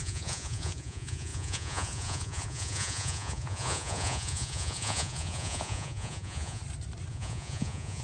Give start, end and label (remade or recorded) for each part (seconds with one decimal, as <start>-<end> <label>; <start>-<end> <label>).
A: 0.0-6.6 remade; 6.6-7.1 recorded; 7.1-8.0 remade